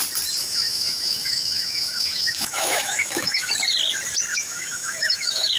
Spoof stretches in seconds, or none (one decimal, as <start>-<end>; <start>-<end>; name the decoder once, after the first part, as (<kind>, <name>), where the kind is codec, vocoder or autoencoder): 0.4-3.5 (autoencoder, DAC-VAE); 4.3-5.6